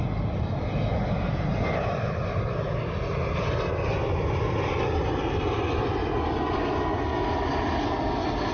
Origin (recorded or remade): recorded